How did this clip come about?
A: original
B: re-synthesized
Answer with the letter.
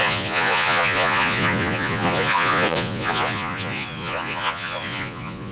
B